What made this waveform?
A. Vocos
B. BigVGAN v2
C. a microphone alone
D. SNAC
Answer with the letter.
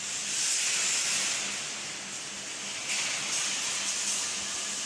C